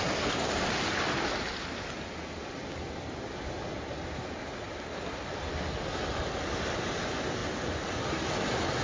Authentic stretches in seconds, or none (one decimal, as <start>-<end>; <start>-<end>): 0.0-8.8